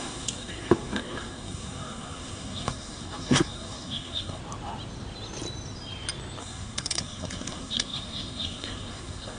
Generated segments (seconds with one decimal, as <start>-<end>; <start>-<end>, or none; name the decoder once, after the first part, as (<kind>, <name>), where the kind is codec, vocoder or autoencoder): 0.0-4.4 (codec, SNAC); 6.4-9.4